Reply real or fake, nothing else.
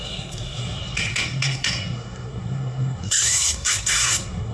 fake